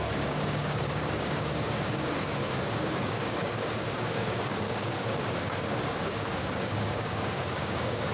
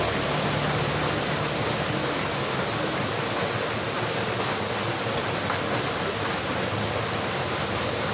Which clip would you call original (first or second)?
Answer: second